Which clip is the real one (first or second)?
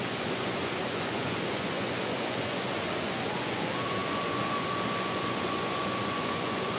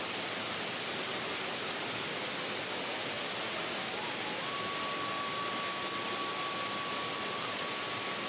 second